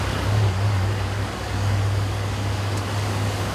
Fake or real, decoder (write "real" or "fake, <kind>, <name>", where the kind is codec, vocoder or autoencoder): fake, codec, DAC